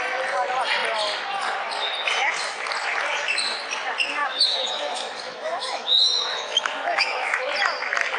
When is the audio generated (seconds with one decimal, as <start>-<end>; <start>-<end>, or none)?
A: 4.2-7.5